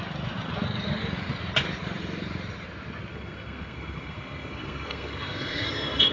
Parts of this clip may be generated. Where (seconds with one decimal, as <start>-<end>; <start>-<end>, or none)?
3.1-6.1